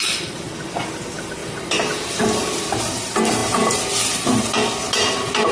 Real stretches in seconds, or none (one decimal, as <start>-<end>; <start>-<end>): 0.0-5.5